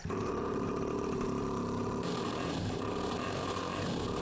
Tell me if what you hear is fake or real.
real